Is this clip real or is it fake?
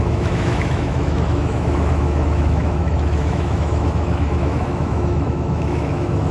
fake